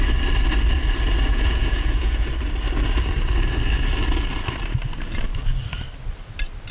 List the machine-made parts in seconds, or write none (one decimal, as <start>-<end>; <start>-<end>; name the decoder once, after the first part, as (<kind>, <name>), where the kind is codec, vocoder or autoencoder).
1.3-2.3 (vocoder, Vocos)